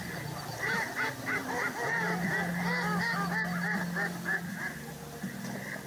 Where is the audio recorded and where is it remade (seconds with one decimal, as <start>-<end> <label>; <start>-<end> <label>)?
0.0-5.9 recorded